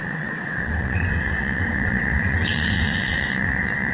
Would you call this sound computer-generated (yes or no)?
yes